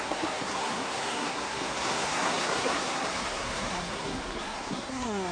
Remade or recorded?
remade